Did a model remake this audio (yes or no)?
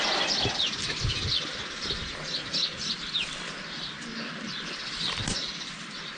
yes